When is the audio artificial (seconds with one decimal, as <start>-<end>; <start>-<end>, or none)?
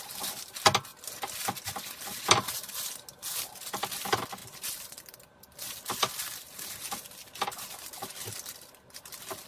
0.9-1.6